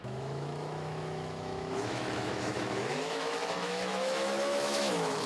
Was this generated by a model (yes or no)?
yes